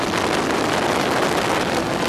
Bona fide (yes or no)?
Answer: yes